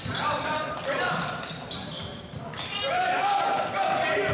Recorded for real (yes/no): no